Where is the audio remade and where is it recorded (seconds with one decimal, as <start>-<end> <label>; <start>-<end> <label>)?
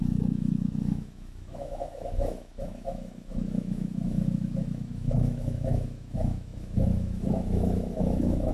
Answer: 0.0-8.5 remade